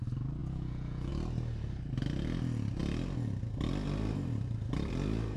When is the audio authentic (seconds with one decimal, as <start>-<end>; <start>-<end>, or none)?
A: 0.0-0.4; 1.1-5.4